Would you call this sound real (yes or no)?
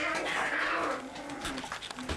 yes